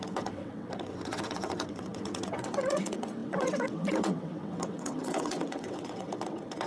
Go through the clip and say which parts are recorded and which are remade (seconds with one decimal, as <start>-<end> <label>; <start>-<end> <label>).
0.0-6.7 remade